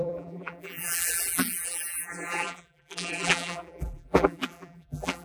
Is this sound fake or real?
fake